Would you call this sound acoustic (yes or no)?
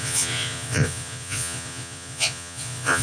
no